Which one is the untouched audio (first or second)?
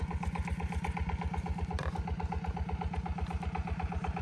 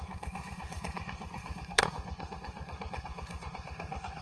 first